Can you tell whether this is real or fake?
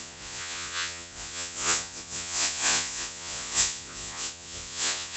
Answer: fake